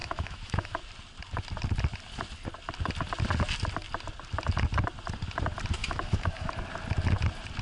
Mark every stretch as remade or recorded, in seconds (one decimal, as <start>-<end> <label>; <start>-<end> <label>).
0.0-0.8 remade; 0.8-5.8 recorded; 5.8-6.5 remade; 6.5-7.6 recorded